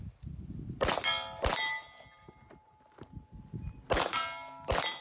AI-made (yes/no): no